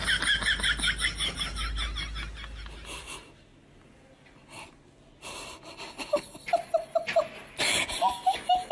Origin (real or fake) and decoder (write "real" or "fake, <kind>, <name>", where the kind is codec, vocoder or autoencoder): real